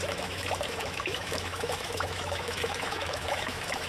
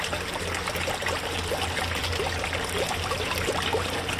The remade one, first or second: first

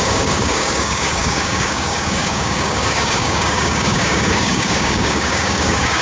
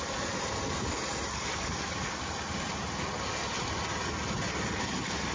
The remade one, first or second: first